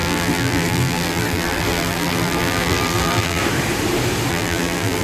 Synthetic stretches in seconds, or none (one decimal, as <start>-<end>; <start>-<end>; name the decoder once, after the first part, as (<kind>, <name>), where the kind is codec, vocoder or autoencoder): 0.0-3.4 (vocoder, BigVGAN v2); 4.3-5.0